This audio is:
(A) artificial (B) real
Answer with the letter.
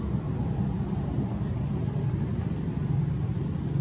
B